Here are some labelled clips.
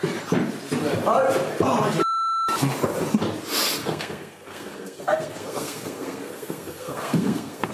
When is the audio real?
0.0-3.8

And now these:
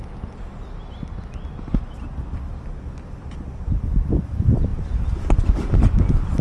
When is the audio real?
0.0-6.4

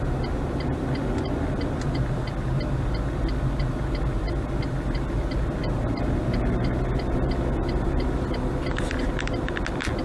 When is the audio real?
0.0-10.0